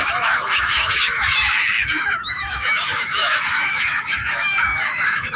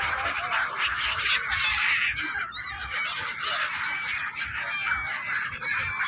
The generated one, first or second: first